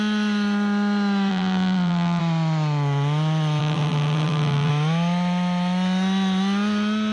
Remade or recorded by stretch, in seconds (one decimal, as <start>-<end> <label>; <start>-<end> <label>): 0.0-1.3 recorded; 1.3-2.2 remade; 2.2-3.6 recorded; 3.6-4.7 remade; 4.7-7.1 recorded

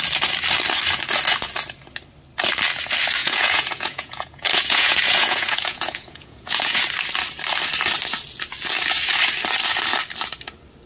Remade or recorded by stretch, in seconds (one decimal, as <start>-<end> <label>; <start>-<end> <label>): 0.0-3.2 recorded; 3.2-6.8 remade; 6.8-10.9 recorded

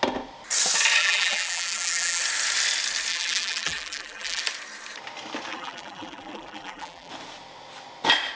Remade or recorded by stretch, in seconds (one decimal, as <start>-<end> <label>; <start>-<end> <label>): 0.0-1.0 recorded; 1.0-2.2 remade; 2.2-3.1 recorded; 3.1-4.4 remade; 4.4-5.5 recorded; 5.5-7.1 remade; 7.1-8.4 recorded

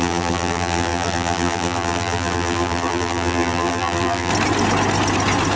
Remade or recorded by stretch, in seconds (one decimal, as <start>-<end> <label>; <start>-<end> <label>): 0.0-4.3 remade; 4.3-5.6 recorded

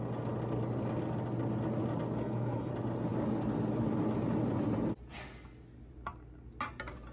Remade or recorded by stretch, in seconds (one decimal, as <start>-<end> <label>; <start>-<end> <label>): 0.0-2.2 recorded; 2.2-2.7 remade; 2.7-7.1 recorded

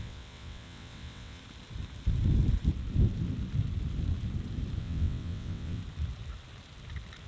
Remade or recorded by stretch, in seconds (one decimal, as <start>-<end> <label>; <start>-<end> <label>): 0.0-1.4 remade; 1.4-4.8 recorded; 4.8-5.8 remade; 5.8-7.3 recorded